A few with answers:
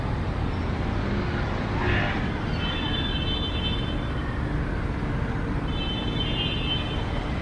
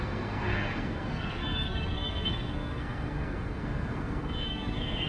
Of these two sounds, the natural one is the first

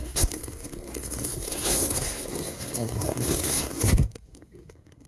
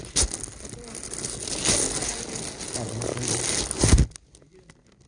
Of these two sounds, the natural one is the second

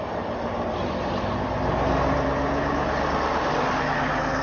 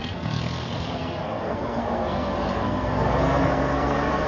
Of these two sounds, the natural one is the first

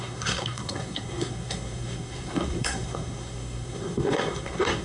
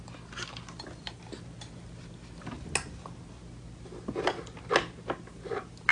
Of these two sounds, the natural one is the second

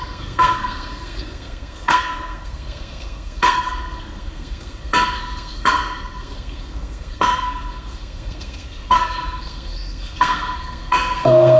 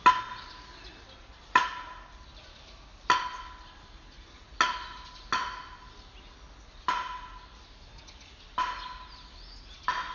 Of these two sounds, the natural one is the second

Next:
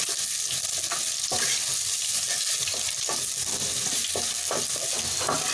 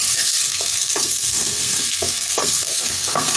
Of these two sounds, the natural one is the first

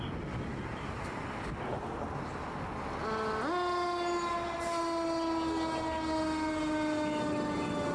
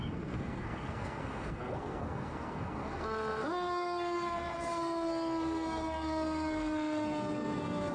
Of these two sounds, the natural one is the first